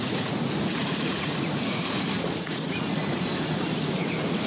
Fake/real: fake